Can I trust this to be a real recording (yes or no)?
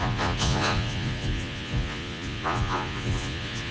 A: no